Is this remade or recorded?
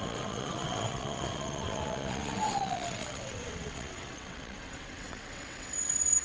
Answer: remade